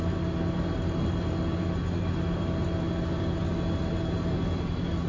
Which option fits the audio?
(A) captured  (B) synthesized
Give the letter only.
A